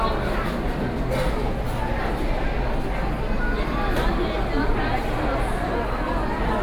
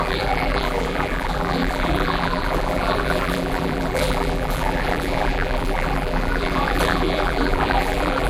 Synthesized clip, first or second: second